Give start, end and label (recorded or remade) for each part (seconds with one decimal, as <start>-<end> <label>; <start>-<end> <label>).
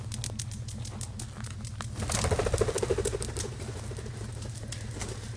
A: 0.0-2.9 recorded; 2.9-4.2 remade; 4.2-5.4 recorded